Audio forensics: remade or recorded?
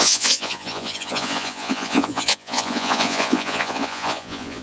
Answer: remade